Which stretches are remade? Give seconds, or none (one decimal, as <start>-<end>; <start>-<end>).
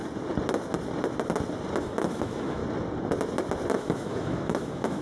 1.8-2.6; 3.7-5.0